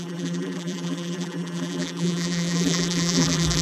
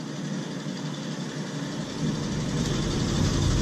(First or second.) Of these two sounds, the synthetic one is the first